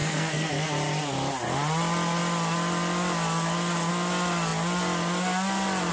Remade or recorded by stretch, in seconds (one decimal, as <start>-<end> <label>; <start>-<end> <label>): 0.0-0.5 remade; 0.5-5.9 recorded